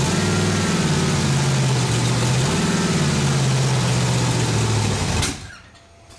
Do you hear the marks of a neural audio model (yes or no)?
no